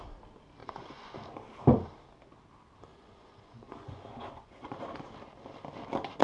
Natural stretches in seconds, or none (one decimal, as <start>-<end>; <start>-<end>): 0.0-0.6; 1.1-2.9; 4.8-6.2